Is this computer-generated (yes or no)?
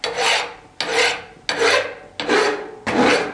no